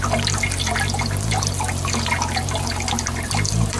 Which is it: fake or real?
real